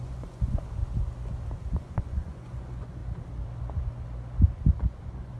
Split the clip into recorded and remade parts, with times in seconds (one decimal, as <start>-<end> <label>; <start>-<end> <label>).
0.0-0.8 remade; 0.8-1.7 recorded; 1.7-3.0 remade; 3.0-4.8 recorded; 4.8-5.4 remade